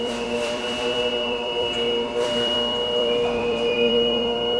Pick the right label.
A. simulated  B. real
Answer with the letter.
A